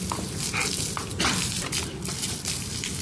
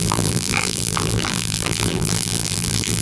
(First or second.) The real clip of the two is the first